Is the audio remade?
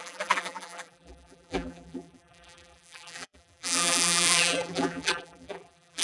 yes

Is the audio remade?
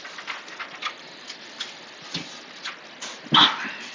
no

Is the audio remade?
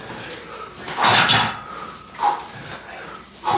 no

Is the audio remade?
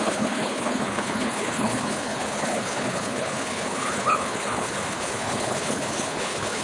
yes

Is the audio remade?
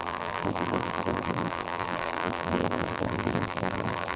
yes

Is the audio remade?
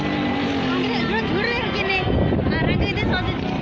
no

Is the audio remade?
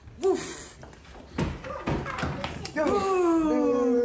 no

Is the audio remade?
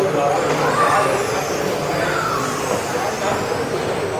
no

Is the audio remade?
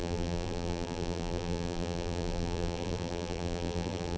yes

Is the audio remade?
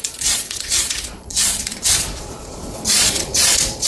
yes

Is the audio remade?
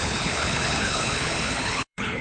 yes